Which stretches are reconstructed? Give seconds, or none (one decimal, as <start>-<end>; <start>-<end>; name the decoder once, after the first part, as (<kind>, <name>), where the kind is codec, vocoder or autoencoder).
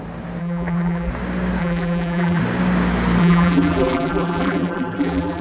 0.4-1.1 (vocoder, BigVGAN v2); 1.6-2.4; 3.2-5.4